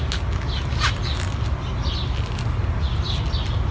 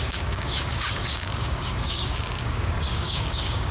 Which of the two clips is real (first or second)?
first